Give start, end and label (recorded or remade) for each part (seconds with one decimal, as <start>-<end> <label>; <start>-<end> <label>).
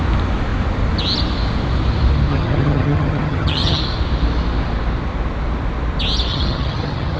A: 0.0-2.3 recorded; 2.3-3.8 remade; 3.8-6.3 recorded; 6.3-7.2 remade